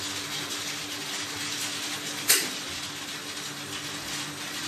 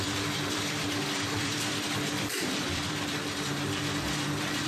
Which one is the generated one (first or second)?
second